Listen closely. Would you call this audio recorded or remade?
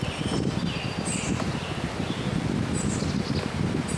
recorded